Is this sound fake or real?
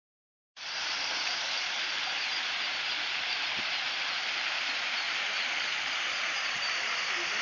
fake